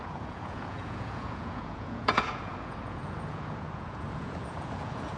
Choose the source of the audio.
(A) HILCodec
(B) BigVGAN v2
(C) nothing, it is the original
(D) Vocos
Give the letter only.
D